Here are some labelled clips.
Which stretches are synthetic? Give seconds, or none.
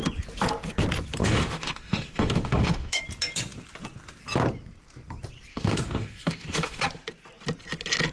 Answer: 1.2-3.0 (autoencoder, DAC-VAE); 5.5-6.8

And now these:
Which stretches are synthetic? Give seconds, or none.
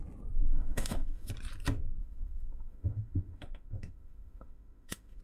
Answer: 0.4-1.3 (autoencoder, DAC-VAE); 2.0-5.2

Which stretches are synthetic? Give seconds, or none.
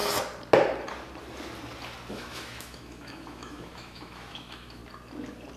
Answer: 2.1-4.8 (autoencoder, DAC-VAE)